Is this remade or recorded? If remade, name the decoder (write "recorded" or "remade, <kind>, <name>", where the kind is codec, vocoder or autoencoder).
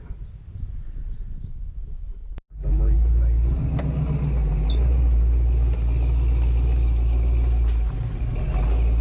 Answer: recorded